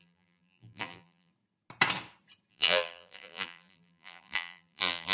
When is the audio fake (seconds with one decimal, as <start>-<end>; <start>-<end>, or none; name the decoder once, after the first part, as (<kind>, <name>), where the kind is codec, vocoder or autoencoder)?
0.0-1.3 (vocoder, BigVGAN v2); 2.5-5.1